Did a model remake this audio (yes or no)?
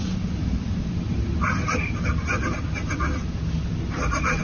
yes